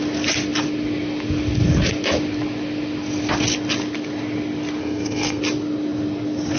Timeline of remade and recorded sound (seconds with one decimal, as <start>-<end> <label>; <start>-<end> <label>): 0.0-4.8 recorded; 4.8-5.4 remade; 5.4-6.6 recorded